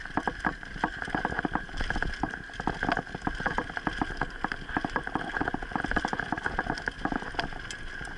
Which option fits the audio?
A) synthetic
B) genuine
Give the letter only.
B